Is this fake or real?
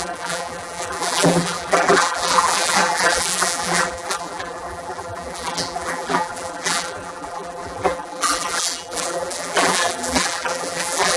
fake